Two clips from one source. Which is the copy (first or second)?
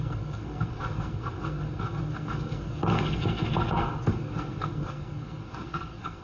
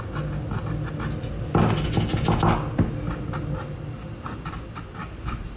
first